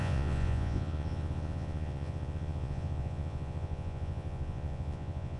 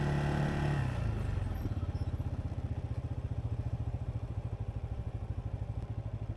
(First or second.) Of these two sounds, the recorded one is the second